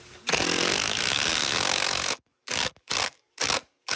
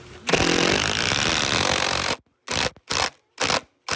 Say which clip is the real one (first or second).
second